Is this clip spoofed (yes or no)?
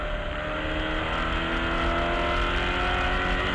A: no